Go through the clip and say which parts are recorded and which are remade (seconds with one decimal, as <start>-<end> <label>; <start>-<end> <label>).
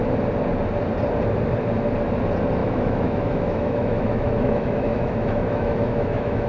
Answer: 0.0-2.6 recorded; 2.6-6.5 remade